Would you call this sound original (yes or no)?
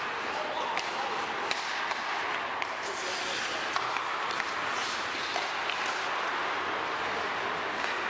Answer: yes